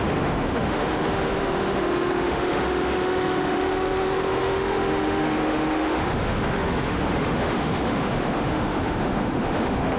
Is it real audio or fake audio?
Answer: fake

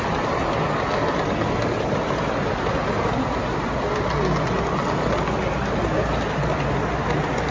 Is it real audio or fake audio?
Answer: real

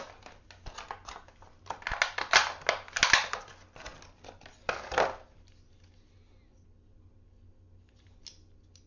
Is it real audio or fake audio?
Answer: real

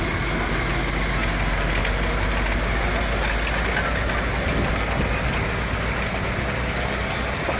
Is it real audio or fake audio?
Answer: real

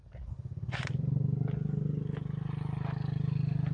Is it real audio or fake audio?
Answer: real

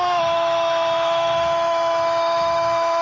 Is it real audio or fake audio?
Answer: fake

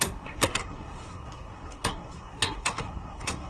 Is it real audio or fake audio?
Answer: fake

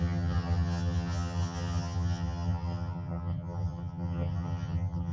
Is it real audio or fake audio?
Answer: fake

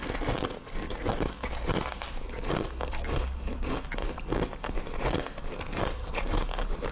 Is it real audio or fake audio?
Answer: real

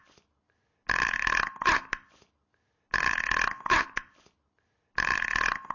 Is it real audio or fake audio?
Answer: real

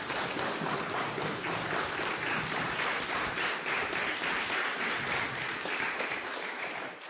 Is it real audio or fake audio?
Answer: fake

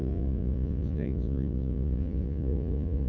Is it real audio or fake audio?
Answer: fake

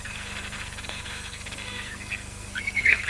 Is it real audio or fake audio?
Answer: fake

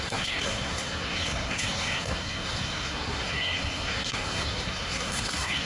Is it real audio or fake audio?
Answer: fake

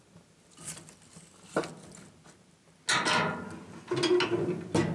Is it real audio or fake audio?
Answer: real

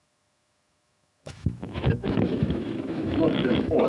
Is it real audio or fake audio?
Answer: fake